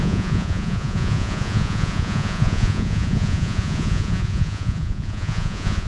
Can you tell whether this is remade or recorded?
remade